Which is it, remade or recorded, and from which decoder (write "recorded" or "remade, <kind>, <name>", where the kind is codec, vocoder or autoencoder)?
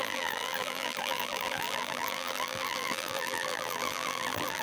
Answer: remade, vocoder, BigVGAN v2